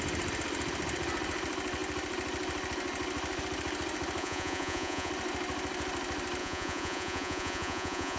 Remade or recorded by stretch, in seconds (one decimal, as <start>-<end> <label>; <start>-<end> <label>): 0.0-4.2 recorded; 4.2-5.1 remade; 5.1-6.4 recorded; 6.4-8.2 remade